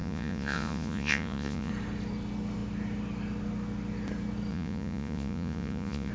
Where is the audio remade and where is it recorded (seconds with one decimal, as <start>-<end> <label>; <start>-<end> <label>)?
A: 0.0-1.7 remade; 1.7-4.5 recorded; 4.5-6.1 remade